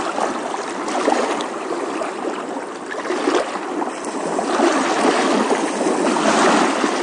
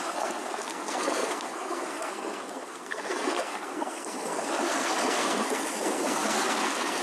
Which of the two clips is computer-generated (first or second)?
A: second